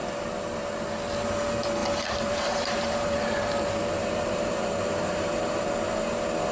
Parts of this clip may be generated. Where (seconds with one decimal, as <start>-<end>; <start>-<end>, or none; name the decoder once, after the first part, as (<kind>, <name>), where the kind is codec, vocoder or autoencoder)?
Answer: 1.8-5.7 (vocoder, BigVGAN v2)